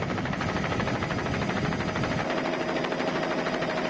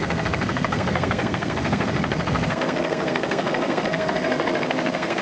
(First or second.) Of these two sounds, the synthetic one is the second